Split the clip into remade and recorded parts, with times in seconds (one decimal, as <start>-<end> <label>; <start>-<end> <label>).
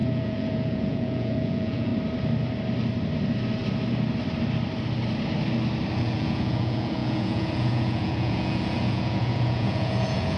0.0-1.9 remade; 1.9-6.0 recorded; 6.0-10.4 remade